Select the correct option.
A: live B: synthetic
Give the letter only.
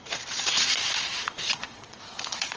B